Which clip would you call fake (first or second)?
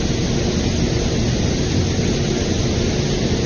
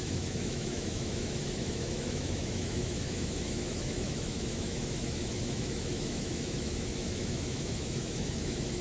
second